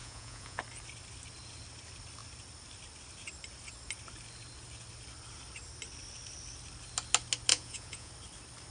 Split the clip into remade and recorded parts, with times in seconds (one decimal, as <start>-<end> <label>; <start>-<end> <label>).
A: 0.0-0.6 remade; 0.6-7.5 recorded; 7.5-8.1 remade; 8.1-8.7 recorded